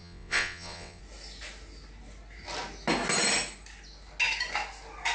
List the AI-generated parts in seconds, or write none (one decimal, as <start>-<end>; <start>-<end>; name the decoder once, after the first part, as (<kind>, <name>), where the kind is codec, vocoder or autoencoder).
0.0-1.0 (vocoder, WaveNeXt)